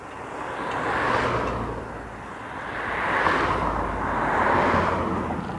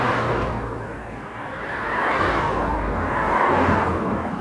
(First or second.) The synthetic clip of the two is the second